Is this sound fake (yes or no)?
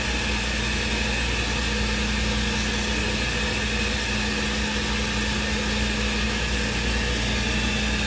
no